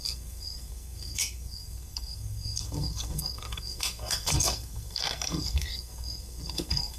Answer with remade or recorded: remade